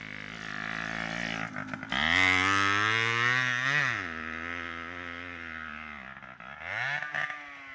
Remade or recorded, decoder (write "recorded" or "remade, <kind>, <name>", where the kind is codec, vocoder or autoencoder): recorded